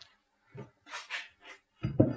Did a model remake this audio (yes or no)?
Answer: yes